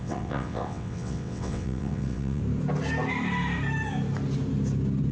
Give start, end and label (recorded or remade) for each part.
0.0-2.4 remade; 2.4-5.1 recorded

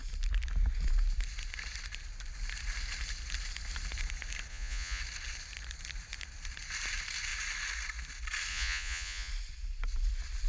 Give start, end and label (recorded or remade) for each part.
0.0-4.5 recorded; 4.5-5.0 remade; 5.0-8.5 recorded; 8.5-9.3 remade; 9.3-10.5 recorded

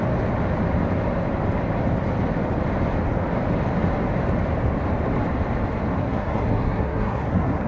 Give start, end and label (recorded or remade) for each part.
0.0-6.0 recorded; 6.0-7.7 remade

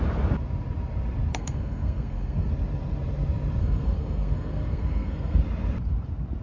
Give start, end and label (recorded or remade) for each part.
0.0-1.3 recorded; 1.3-2.5 remade; 2.5-3.6 recorded; 3.6-5.4 remade; 5.4-6.4 recorded

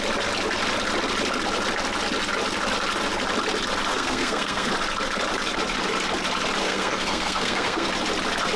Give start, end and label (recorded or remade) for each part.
0.0-3.9 recorded; 3.9-4.7 remade; 4.7-6.6 recorded; 6.6-7.9 remade; 7.9-8.6 recorded

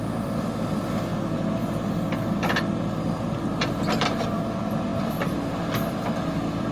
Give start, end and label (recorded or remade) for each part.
0.0-6.7 recorded

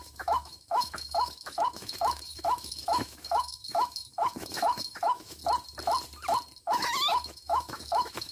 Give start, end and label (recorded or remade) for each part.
0.0-5.4 remade; 5.4-6.6 recorded; 6.6-8.3 remade